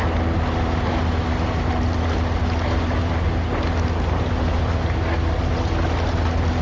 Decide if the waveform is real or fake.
real